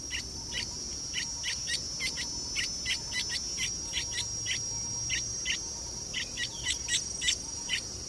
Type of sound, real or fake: real